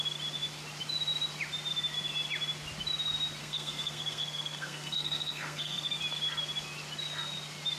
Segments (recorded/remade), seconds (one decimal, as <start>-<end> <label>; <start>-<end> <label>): 0.0-3.4 recorded; 3.4-6.0 remade; 6.0-7.8 recorded